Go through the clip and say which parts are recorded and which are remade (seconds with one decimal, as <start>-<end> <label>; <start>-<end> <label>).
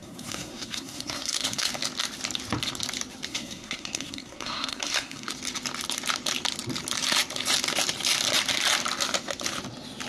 0.0-1.7 remade; 1.7-3.3 recorded; 3.3-5.3 remade; 5.3-10.1 recorded